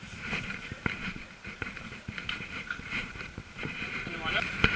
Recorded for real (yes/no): no